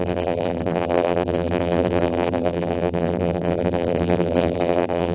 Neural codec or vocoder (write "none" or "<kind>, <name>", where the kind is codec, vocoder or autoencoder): vocoder, BigVGAN v2